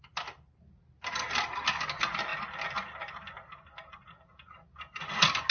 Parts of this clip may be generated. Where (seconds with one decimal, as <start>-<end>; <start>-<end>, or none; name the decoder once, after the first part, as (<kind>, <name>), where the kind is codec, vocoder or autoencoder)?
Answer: none